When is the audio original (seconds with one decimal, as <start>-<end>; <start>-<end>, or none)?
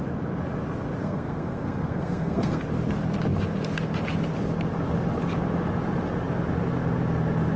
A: 0.0-1.0; 2.6-7.6